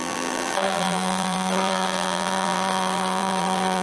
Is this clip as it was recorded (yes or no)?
no